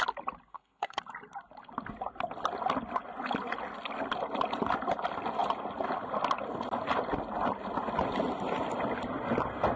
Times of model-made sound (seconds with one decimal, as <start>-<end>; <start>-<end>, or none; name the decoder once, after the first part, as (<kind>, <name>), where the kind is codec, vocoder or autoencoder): 0.5-1.0 (codec, SNAC)